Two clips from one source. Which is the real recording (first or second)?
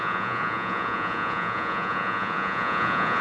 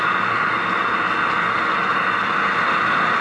second